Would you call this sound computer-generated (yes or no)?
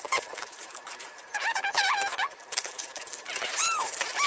yes